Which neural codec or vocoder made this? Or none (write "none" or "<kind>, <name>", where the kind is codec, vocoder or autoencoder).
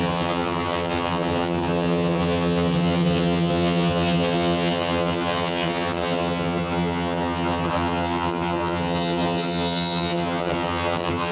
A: vocoder, HiFi-GAN